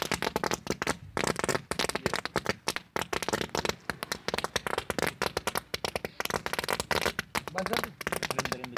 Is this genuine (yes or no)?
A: yes